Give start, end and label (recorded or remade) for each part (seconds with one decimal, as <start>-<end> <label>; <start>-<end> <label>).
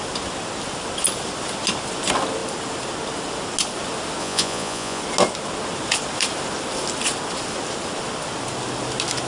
0.0-4.2 recorded; 4.2-5.0 remade; 5.0-9.3 recorded